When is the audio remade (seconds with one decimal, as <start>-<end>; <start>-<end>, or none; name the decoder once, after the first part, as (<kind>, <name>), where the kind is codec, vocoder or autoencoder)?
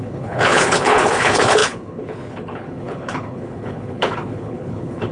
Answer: 0.0-5.1 (codec, HILCodec)